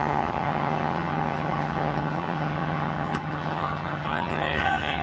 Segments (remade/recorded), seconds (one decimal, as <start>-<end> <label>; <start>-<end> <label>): 0.0-5.0 remade